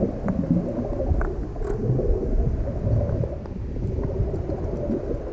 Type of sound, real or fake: real